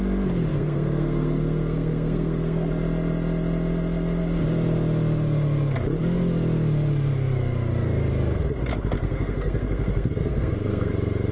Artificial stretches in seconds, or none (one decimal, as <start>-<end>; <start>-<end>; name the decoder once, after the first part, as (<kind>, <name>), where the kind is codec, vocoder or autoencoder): 0.5-2.7 (codec, SNAC); 9.0-10.9